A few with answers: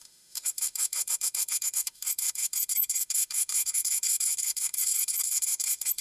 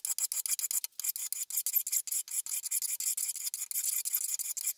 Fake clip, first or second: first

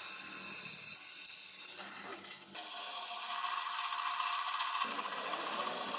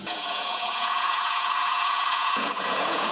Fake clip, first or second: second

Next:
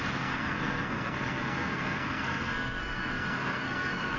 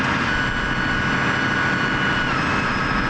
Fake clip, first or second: first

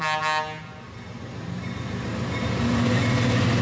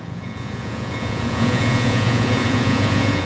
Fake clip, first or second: second